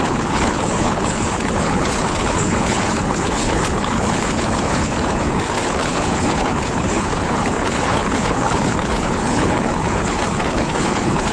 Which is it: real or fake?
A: fake